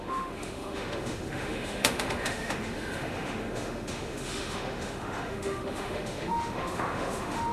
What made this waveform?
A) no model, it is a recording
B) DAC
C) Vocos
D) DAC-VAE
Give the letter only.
D